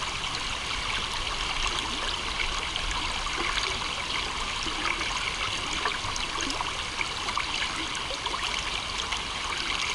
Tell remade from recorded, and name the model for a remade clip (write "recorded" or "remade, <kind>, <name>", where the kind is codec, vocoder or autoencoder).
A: recorded